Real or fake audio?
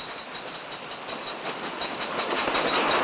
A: real